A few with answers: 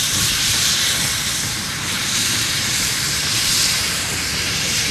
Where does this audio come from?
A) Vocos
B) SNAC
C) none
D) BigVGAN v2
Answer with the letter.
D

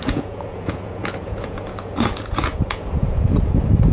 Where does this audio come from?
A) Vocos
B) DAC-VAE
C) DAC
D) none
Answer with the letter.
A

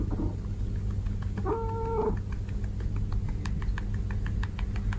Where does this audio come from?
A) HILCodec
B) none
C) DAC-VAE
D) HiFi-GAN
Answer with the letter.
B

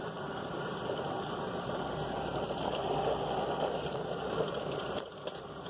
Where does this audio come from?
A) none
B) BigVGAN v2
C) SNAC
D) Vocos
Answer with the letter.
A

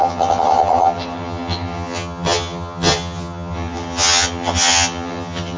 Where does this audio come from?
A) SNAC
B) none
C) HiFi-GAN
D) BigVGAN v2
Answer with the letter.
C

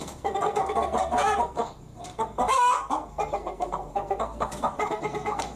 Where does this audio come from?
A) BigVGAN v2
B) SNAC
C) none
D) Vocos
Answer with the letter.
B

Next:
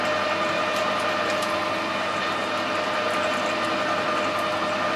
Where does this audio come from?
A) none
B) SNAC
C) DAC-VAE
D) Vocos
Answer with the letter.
A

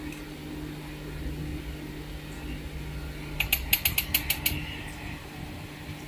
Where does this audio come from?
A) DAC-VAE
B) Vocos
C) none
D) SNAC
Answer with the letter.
C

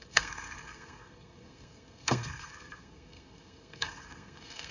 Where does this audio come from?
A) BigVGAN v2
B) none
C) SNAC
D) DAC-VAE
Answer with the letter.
C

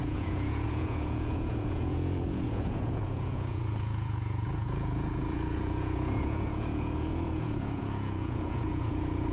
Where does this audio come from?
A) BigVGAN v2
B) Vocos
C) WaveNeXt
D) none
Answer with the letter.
B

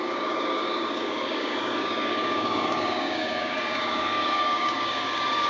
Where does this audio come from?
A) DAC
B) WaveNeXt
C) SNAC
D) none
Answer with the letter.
A